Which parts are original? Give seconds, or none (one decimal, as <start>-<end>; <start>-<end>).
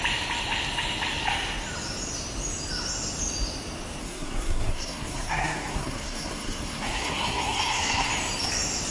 0.0-4.0; 8.1-8.9